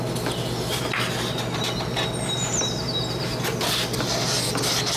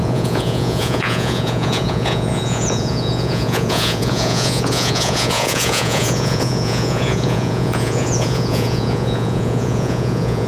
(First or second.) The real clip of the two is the first